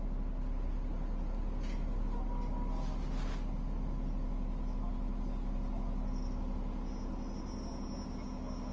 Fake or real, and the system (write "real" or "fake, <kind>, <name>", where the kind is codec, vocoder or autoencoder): real